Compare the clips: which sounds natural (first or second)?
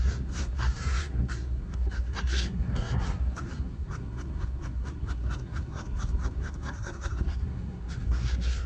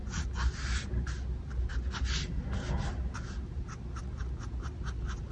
second